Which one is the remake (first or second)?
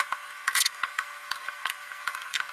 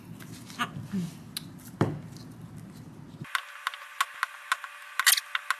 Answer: first